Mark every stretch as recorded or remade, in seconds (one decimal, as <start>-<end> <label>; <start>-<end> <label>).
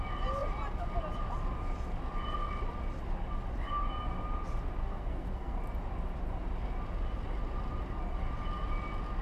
0.0-4.8 recorded; 4.8-5.6 remade; 5.6-9.2 recorded